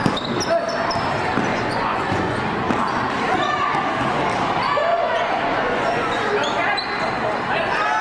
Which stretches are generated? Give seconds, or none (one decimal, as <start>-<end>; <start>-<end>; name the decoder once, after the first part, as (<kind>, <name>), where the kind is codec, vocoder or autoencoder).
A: 1.5-2.4 (vocoder, Vocos); 4.9-6.3